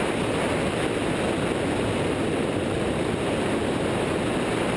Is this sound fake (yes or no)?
no